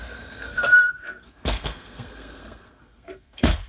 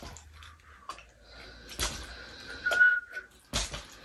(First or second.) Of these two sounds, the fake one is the first